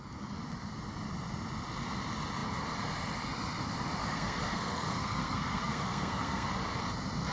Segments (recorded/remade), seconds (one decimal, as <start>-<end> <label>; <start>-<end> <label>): 0.0-4.0 recorded; 4.0-6.5 remade; 6.5-7.3 recorded